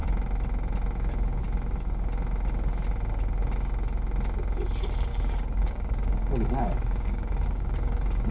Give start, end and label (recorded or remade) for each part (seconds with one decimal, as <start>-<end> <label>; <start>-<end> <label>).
0.0-5.1 recorded; 5.1-8.3 remade